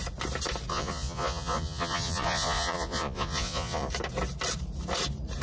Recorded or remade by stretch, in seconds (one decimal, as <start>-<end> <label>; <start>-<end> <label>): 0.0-0.7 recorded; 0.7-3.9 remade; 3.9-5.4 recorded